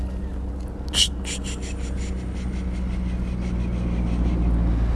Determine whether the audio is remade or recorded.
recorded